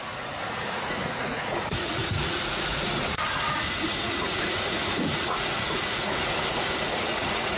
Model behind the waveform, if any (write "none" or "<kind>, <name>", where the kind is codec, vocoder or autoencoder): vocoder, Vocos